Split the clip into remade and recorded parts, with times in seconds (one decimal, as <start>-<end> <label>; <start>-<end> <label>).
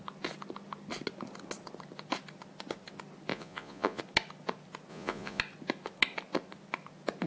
0.0-3.3 recorded; 3.3-4.0 remade; 4.0-4.9 recorded; 4.9-5.4 remade; 5.4-7.3 recorded